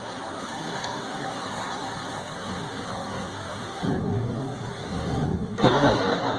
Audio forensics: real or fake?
fake